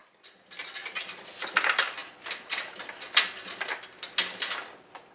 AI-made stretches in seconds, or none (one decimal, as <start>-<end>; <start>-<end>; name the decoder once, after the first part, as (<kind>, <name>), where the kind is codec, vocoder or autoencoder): none